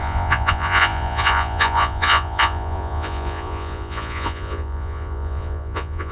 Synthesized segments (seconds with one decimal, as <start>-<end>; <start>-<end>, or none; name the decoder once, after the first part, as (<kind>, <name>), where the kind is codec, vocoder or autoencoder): 0.0-6.1 (vocoder, Vocos)